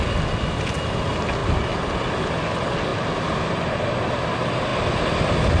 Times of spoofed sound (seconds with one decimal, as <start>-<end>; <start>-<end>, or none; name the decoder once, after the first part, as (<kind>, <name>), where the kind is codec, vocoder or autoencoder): 2.9-3.7 (vocoder, BigVGAN v2); 4.7-5.6